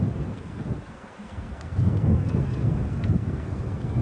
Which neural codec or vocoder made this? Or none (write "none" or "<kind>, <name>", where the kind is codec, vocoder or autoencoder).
codec, SNAC